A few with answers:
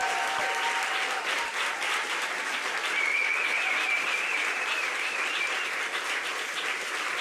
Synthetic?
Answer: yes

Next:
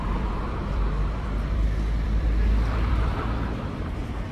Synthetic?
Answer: yes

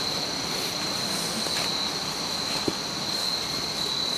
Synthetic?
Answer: no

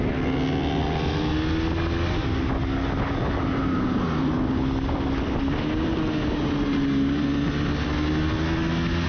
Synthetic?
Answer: no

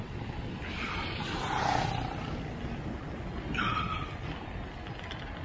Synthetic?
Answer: no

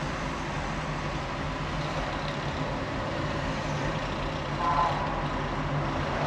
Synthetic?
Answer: no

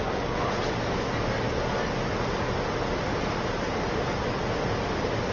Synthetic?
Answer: no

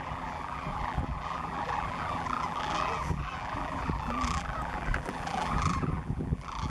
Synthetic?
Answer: yes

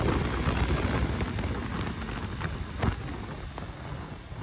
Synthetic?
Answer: no